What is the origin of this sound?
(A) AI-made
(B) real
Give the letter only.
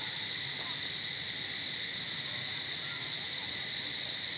B